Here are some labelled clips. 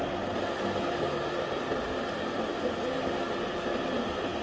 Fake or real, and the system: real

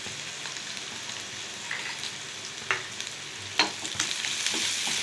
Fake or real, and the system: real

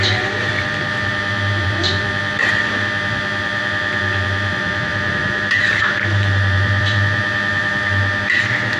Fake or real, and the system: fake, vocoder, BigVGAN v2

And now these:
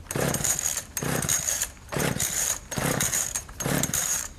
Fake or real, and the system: fake, vocoder, BigVGAN v2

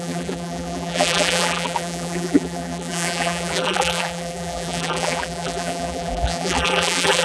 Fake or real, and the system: fake, vocoder, BigVGAN v2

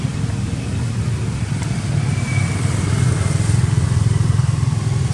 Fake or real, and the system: real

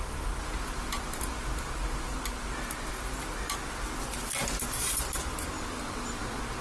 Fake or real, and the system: real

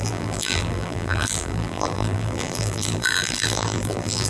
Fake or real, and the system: fake, vocoder, BigVGAN v2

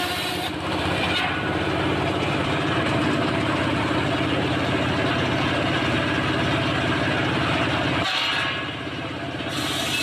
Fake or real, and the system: fake, vocoder, BigVGAN v2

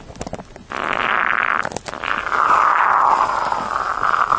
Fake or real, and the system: real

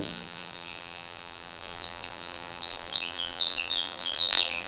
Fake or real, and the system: fake, vocoder, BigVGAN v2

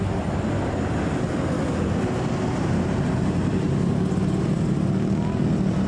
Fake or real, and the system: real